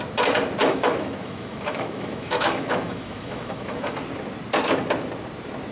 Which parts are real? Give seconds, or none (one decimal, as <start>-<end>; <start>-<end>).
0.0-0.6; 4.0-5.7